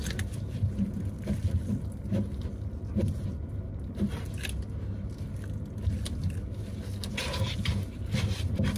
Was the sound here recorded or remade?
recorded